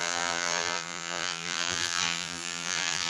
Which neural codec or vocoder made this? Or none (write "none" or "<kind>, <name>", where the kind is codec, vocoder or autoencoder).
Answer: vocoder, BigVGAN v2